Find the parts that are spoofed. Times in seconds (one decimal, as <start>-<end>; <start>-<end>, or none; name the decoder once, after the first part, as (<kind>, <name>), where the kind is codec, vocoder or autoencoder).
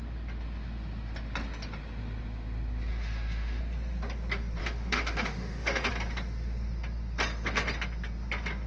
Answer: 2.9-3.6 (autoencoder, DAC-VAE); 4.6-5.9